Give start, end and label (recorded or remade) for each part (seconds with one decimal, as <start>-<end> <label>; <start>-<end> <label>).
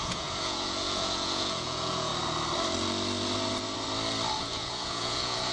0.0-2.1 remade; 2.1-4.4 recorded; 4.4-5.5 remade